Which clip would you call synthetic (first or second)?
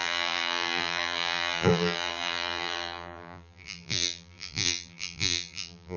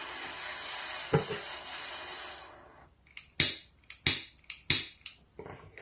first